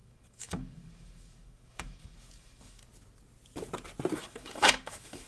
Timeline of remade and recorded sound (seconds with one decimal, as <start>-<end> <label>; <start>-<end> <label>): 0.0-2.8 remade; 2.8-4.2 recorded; 4.2-5.3 remade